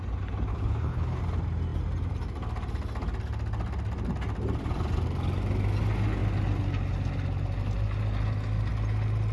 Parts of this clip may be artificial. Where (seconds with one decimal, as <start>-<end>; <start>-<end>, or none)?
0.5-1.2